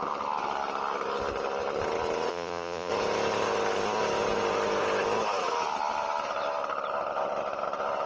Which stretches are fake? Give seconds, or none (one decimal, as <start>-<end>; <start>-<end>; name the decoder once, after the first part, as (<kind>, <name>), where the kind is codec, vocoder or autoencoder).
2.3-2.9 (vocoder, Vocos)

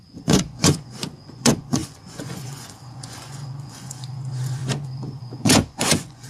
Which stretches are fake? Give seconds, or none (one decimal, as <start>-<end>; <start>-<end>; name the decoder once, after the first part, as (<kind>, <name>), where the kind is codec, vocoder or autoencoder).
0.0-6.3 (vocoder, Vocos)

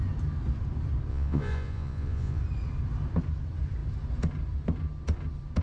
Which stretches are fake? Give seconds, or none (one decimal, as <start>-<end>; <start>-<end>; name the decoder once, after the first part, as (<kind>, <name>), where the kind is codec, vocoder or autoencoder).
1.1-2.4 (vocoder, Vocos)

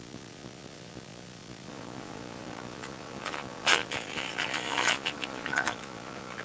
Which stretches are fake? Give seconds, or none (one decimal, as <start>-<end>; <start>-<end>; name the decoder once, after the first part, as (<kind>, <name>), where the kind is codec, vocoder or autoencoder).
0.0-6.4 (vocoder, Vocos)

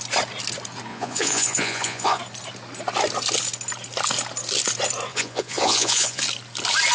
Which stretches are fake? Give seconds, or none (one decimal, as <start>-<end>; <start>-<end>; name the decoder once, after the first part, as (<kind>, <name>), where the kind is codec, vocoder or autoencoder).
0.9-2.2 (vocoder, Vocos); 5.1-6.2

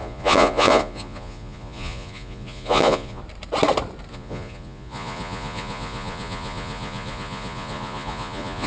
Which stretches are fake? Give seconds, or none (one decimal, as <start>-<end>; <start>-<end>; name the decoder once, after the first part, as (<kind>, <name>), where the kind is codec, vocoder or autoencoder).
0.0-3.2 (vocoder, Vocos); 4.1-8.7

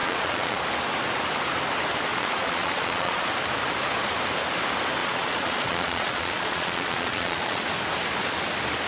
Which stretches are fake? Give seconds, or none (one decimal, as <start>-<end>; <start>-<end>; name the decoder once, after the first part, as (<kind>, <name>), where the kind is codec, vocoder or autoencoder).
0.0-0.6 (vocoder, Vocos); 2.1-3.3; 5.0-7.6

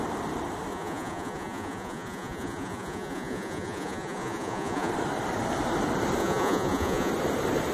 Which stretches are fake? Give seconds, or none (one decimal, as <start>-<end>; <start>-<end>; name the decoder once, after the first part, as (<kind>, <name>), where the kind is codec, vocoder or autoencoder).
0.7-4.9 (vocoder, Vocos); 6.2-7.1